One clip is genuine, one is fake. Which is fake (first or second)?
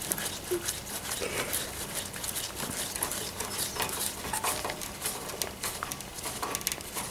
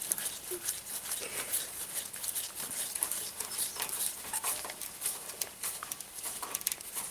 second